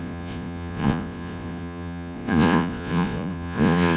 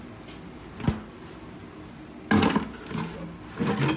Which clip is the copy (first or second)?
first